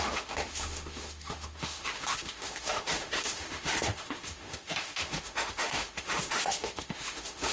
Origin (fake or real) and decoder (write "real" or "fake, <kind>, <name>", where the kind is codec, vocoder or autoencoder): fake, autoencoder, DAC-VAE